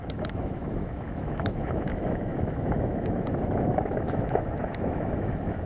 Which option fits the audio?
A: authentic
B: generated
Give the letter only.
B